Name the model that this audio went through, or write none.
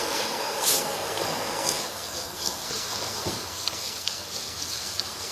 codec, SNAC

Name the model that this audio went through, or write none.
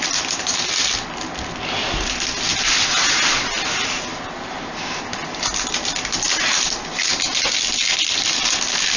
none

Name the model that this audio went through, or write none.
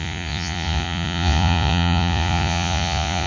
vocoder, Vocos